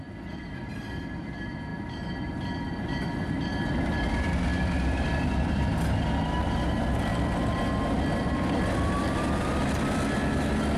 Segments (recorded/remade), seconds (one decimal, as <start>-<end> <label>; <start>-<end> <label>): 0.0-10.8 recorded